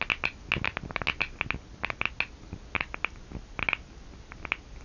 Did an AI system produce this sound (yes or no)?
no